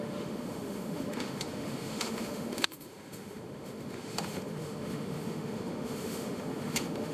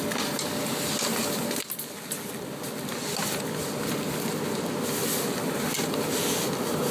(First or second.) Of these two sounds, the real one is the second